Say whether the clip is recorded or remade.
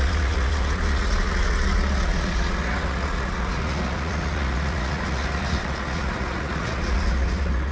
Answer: remade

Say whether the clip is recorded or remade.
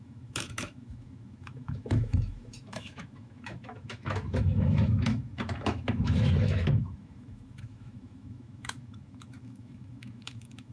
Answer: remade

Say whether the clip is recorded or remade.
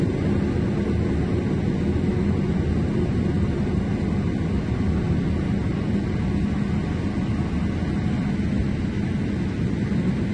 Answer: recorded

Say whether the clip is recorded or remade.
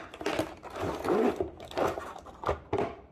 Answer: recorded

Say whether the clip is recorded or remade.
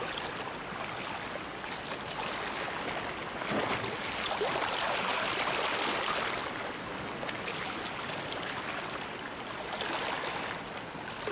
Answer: recorded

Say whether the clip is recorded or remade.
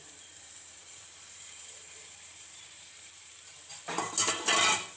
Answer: remade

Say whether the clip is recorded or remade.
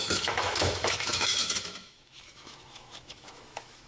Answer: remade